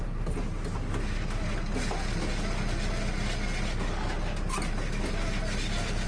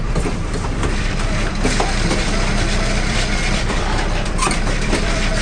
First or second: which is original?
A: first